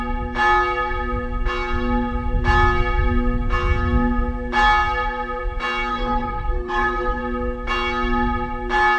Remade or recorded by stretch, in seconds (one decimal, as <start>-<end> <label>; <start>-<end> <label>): 0.0-5.9 recorded; 5.9-7.2 remade; 7.2-9.0 recorded

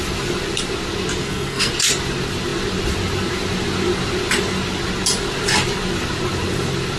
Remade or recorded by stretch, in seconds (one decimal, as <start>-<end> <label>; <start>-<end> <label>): 0.0-1.2 recorded; 1.2-1.7 remade; 1.7-7.0 recorded

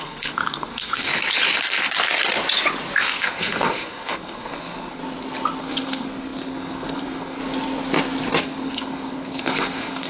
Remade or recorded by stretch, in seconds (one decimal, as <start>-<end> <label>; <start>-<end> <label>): 0.0-1.1 remade; 1.1-3.0 recorded; 3.0-5.0 remade; 5.0-5.6 recorded; 5.6-7.4 remade; 7.4-8.4 recorded; 8.4-10.1 remade

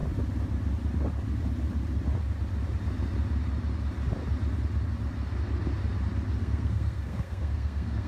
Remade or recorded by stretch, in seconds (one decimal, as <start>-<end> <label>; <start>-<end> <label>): 0.0-6.4 recorded; 6.4-8.1 remade

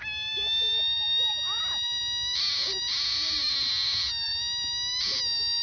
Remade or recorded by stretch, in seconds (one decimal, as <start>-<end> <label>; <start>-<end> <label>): 0.0-5.6 recorded

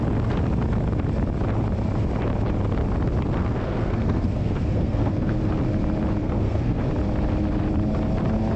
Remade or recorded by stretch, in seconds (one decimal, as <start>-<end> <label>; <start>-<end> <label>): 0.0-3.4 recorded; 3.4-5.5 remade; 5.5-6.2 recorded; 6.2-6.8 remade; 6.8-8.6 recorded